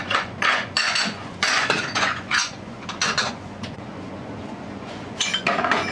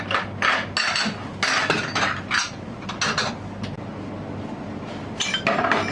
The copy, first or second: first